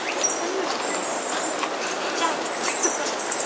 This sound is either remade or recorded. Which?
recorded